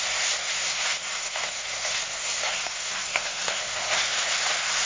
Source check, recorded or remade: remade